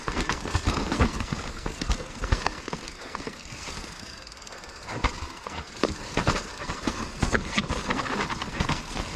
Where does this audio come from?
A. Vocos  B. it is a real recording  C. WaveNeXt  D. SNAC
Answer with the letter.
D